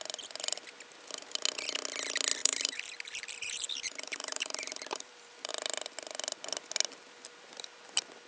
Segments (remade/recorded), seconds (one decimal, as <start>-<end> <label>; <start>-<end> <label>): 0.0-2.4 recorded; 2.4-5.5 remade; 5.5-8.3 recorded